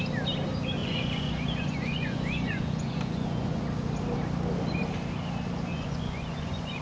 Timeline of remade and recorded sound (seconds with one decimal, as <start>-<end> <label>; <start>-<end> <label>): 0.0-0.8 recorded; 0.8-3.6 remade; 3.6-5.7 recorded; 5.7-6.8 remade